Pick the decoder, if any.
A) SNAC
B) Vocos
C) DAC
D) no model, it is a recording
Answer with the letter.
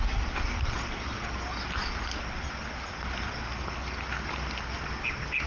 D